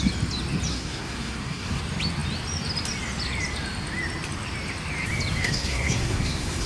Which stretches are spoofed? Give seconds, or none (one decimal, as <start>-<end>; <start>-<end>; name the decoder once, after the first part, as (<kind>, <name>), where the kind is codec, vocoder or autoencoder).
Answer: 0.7-1.8 (codec, SNAC); 5.4-6.7